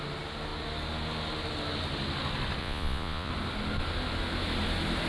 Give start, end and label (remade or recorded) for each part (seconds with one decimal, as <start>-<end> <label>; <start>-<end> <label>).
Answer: 0.0-2.6 recorded; 2.6-3.3 remade; 3.3-5.1 recorded

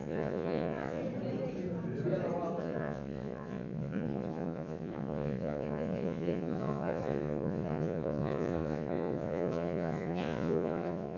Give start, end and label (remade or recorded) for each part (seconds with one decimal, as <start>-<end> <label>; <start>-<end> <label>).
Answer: 0.0-1.0 remade; 1.0-2.6 recorded; 2.6-11.2 remade